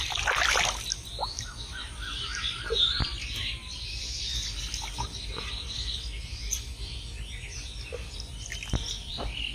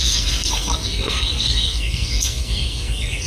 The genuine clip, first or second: first